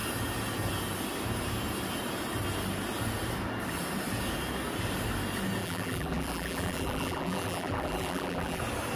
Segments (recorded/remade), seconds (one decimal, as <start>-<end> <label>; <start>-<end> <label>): 0.0-5.6 recorded; 5.6-8.6 remade; 8.6-9.0 recorded